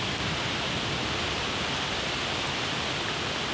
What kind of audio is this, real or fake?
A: real